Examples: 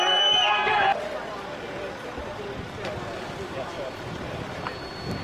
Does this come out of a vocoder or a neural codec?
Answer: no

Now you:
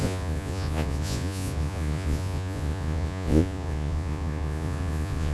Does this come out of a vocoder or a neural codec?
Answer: yes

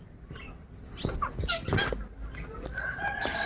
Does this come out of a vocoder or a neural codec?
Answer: no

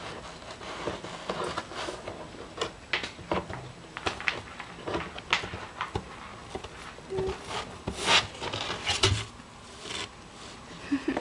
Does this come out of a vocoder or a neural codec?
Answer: no